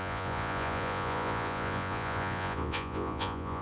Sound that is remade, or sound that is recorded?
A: remade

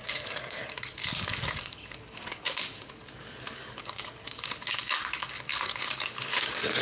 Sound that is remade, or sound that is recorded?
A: remade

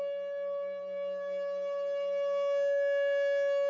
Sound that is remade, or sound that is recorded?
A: recorded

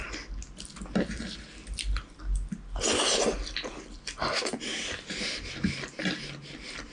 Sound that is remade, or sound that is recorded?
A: recorded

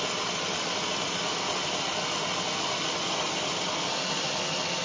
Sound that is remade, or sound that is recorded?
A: recorded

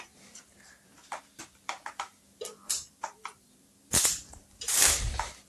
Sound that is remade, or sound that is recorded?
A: remade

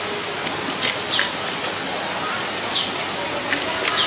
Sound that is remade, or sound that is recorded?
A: recorded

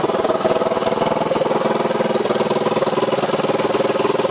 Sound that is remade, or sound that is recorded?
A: recorded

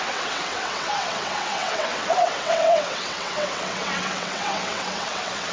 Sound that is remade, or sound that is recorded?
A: remade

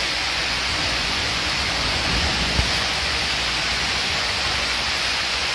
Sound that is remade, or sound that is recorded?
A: remade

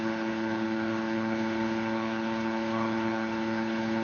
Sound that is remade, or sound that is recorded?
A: remade